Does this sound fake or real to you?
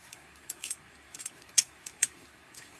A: fake